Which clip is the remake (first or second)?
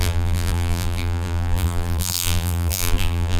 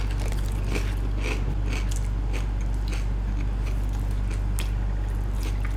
first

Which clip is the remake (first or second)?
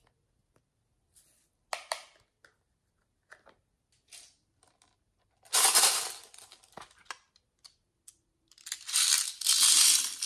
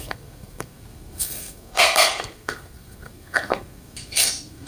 second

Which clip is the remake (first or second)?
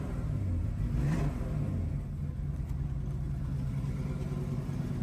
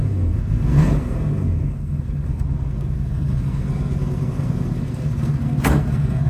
second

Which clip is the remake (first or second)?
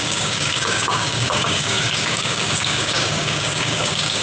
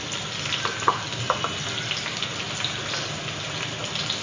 first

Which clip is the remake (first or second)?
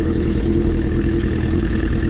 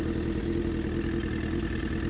first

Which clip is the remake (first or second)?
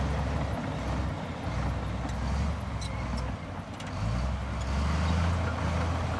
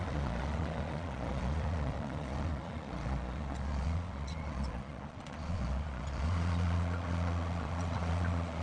second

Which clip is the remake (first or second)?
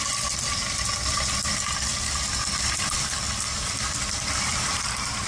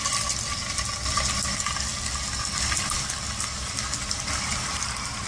first